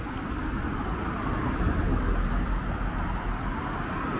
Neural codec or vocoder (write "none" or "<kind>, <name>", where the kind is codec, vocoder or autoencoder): none